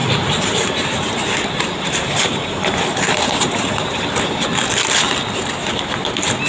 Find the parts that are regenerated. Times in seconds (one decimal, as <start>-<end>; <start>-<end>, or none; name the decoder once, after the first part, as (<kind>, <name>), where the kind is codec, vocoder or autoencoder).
0.0-3.7 (vocoder, BigVGAN v2)